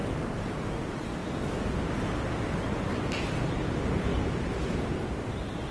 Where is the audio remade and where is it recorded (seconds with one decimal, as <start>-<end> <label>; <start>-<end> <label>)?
0.0-0.7 remade; 0.7-4.1 recorded; 4.1-5.7 remade